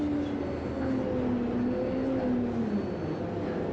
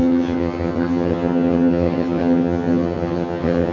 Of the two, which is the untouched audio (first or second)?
first